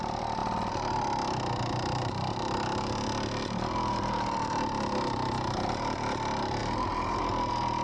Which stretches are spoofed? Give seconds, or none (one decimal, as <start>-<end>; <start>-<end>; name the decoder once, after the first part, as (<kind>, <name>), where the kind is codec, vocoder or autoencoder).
1.9-2.5 (vocoder, BigVGAN v2); 3.9-4.6; 6.6-7.2